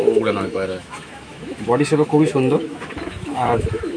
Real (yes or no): no